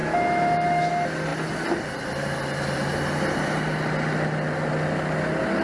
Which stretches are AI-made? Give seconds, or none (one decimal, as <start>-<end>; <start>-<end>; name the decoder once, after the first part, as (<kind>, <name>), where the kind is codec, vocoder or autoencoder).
0.0-0.9 (autoencoder, DAC-VAE)